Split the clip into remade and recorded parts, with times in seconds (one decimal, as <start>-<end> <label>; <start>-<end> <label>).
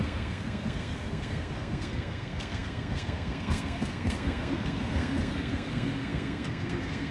0.0-7.1 remade